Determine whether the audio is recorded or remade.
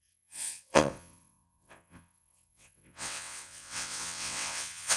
remade